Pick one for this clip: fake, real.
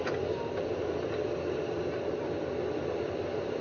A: real